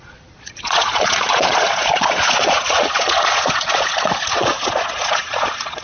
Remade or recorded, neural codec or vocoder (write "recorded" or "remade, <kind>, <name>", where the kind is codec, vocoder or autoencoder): remade, vocoder, Vocos